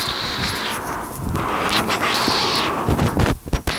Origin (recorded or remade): recorded